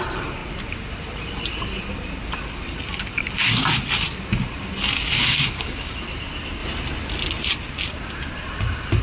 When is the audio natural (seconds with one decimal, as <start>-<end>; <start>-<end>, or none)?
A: 0.0-5.2; 5.9-9.0